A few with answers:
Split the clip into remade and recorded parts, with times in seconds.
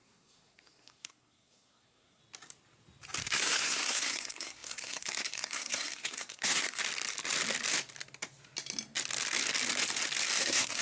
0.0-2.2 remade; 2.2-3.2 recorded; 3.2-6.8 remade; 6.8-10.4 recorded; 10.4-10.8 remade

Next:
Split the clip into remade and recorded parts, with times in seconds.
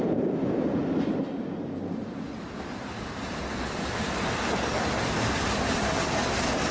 0.0-6.7 recorded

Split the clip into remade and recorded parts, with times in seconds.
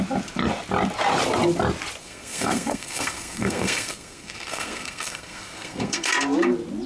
0.0-2.0 recorded; 2.0-6.1 remade; 6.1-6.9 recorded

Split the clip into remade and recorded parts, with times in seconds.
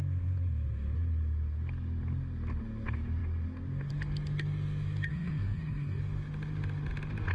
0.0-5.1 recorded; 5.1-6.0 remade; 6.0-7.3 recorded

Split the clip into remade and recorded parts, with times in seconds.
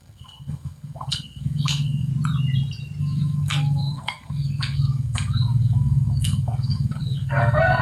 0.0-2.1 remade; 2.1-3.0 recorded; 3.0-7.8 remade